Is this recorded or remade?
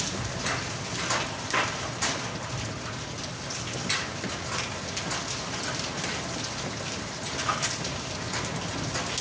recorded